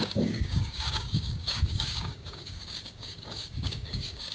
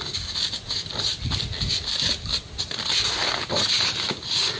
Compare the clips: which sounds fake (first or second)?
first